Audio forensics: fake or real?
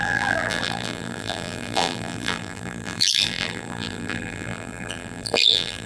fake